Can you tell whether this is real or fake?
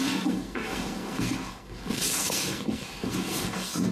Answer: fake